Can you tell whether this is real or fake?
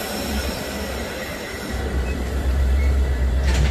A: fake